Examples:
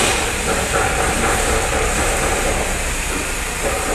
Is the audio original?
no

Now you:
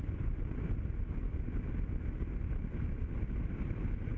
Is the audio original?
yes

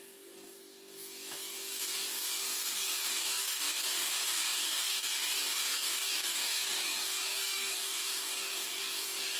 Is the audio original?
no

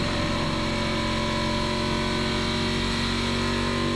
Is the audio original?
yes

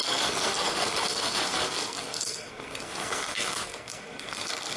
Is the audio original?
no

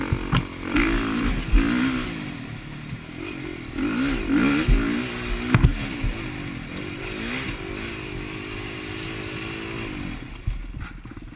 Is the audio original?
yes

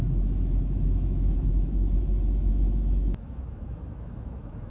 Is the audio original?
no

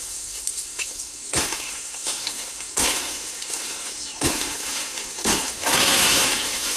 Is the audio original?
no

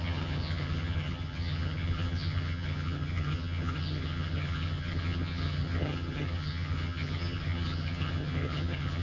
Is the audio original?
no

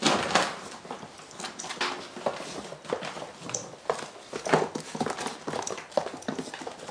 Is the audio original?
yes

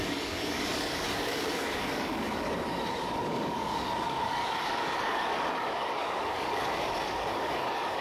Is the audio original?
no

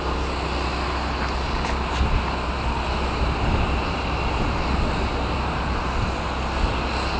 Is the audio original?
yes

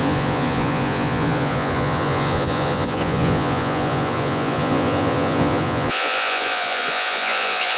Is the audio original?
no